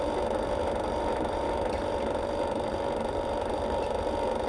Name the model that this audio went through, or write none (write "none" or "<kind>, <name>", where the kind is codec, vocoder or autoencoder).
vocoder, BigVGAN v2